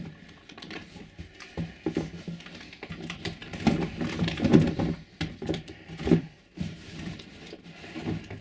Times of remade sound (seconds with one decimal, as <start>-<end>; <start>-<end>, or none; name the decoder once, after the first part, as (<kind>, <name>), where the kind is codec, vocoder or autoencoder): 3.4-3.9 (vocoder, BigVGAN v2); 4.5-7.7

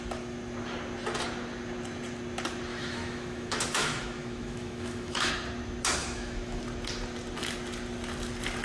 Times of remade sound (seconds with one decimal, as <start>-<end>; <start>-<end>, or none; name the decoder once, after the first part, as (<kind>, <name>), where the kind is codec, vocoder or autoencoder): 2.7-5.3 (autoencoder, DAC-VAE); 6.0-6.6